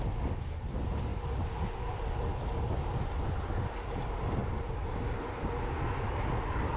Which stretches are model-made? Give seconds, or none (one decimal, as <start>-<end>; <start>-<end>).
none